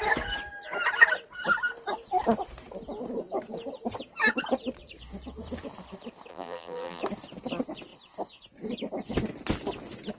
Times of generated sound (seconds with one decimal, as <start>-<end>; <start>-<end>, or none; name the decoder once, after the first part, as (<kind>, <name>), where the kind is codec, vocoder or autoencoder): 6.3-7.0 (vocoder, BigVGAN v2)